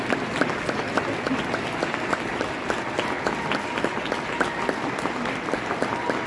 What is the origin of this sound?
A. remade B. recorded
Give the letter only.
B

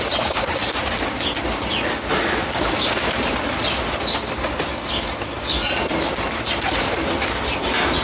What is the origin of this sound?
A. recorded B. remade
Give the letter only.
A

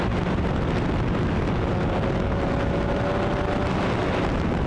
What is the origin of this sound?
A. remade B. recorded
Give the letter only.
B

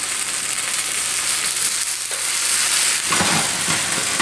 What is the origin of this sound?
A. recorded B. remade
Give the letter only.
A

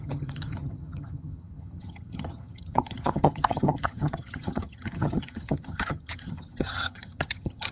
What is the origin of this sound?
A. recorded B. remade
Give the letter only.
B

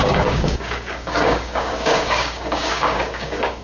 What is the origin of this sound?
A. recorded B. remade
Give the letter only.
B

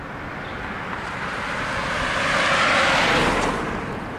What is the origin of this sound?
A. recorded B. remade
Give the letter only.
A